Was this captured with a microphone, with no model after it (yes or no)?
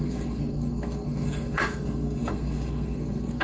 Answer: no